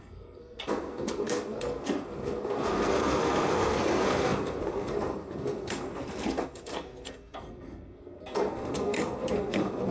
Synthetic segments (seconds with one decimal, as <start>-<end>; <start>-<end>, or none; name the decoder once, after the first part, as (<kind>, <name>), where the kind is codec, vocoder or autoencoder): 0.0-9.9 (codec, SNAC)